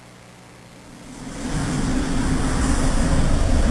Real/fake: real